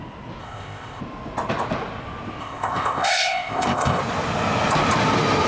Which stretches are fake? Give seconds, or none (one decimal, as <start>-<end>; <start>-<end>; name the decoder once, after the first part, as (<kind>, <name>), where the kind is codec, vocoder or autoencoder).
0.4-1.0 (codec, ZipCodec); 2.4-4.0